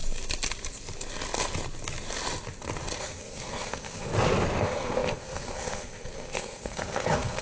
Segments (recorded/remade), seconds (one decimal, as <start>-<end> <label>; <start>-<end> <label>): 0.0-3.0 recorded; 3.0-4.1 remade; 4.1-4.6 recorded; 4.6-7.4 remade

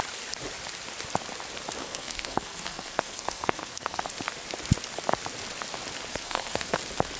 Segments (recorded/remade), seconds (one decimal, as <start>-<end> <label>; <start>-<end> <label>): 0.0-1.8 recorded; 1.8-4.0 remade; 4.0-6.1 recorded; 6.1-6.8 remade; 6.8-7.2 recorded